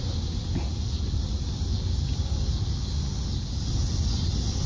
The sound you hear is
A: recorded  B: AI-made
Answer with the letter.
A